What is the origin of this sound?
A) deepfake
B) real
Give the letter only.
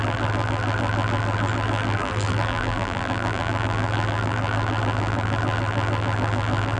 A